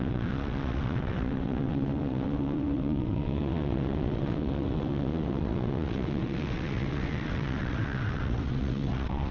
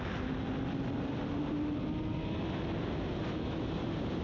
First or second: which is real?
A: second